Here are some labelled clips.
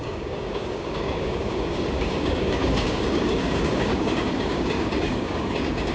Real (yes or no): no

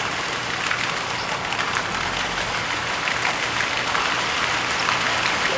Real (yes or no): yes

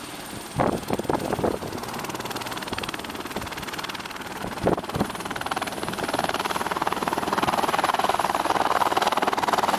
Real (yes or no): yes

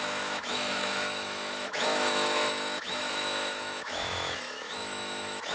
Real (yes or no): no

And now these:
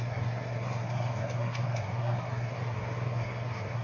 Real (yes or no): no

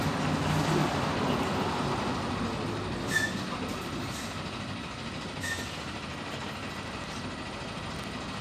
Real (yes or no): yes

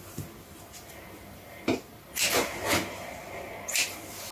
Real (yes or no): yes